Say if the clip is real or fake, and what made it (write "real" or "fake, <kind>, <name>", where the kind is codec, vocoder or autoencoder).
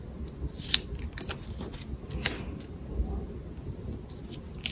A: real